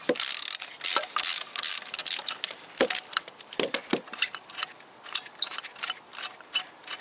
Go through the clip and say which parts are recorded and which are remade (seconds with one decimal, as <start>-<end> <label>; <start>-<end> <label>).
0.0-7.0 recorded

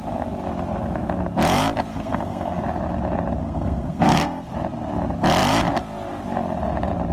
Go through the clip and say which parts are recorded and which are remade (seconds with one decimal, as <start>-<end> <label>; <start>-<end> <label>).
0.0-1.9 recorded; 1.9-2.6 remade; 2.6-3.4 recorded; 3.4-4.5 remade; 4.5-7.1 recorded

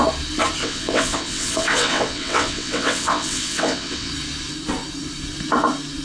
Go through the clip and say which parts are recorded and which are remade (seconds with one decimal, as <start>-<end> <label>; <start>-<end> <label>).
0.0-0.6 recorded; 0.6-4.1 remade; 4.1-6.0 recorded

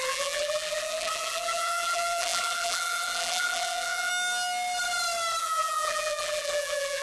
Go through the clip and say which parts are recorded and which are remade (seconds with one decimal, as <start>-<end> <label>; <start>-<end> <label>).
0.0-4.1 remade; 4.1-5.4 recorded; 5.4-7.0 remade

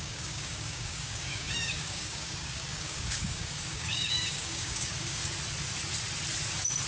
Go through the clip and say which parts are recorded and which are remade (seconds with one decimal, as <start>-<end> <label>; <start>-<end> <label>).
0.0-5.2 remade; 5.2-6.9 recorded

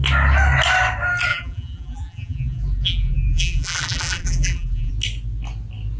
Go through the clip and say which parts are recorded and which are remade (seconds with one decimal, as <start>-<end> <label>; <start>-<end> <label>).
0.0-1.3 recorded; 1.3-4.9 remade; 4.9-6.0 recorded